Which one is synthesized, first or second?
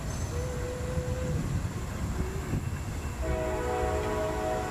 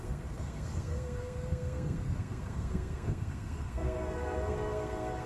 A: second